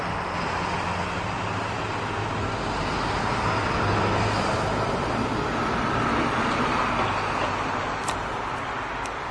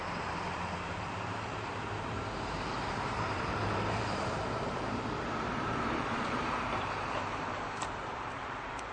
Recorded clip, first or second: first